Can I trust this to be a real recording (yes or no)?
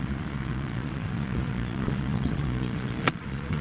no